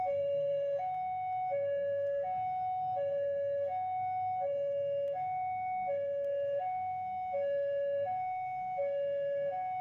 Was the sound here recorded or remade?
remade